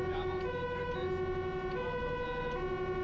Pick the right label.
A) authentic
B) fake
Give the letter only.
A